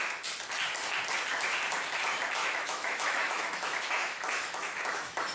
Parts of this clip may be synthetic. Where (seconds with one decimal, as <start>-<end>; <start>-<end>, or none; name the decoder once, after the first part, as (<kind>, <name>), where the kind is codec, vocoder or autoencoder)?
2.4-5.3 (autoencoder, DAC-VAE)